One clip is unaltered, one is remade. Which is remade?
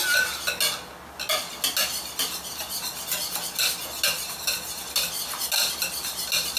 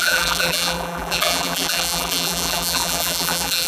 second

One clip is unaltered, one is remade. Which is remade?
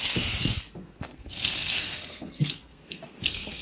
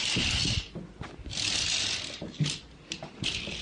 first